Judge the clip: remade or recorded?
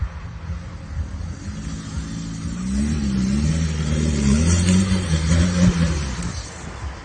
recorded